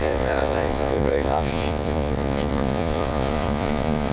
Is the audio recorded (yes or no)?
no